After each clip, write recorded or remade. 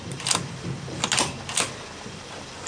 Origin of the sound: recorded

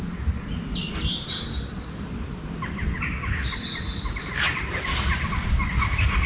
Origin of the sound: recorded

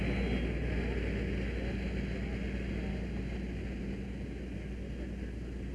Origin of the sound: recorded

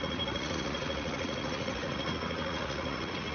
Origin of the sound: remade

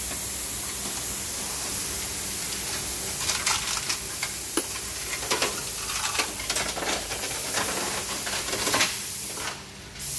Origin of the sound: recorded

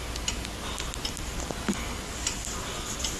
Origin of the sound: recorded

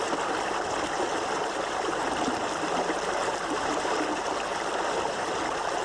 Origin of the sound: recorded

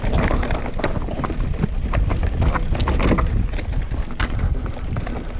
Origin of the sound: recorded